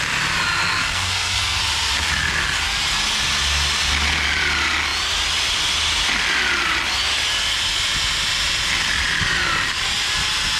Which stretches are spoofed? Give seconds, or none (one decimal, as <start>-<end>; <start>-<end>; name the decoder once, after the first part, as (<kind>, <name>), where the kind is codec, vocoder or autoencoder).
0.6-1.6 (codec, SNAC)